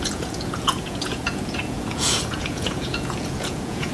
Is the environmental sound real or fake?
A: fake